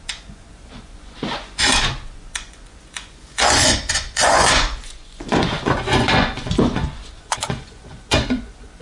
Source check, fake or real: fake